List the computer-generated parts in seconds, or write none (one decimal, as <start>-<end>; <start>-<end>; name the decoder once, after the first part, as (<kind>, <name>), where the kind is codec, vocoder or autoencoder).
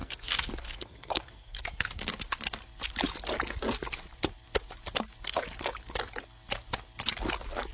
0.0-2.0 (codec, SNAC)